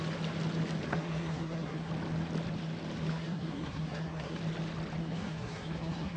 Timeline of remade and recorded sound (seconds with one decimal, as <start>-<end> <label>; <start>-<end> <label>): 0.0-0.9 recorded; 0.9-1.9 remade; 1.9-3.1 recorded; 3.1-4.4 remade; 4.4-5.0 recorded; 5.0-6.2 remade